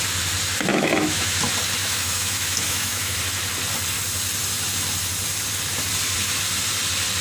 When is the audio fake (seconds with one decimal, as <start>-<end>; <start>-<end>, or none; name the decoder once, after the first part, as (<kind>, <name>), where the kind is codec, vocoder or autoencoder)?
0.7-1.4 (autoencoder, DAC-VAE); 1.8-3.2